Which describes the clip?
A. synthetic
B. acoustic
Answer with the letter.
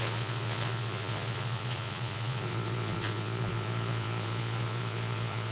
A